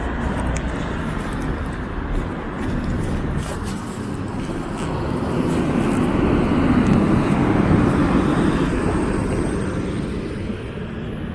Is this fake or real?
real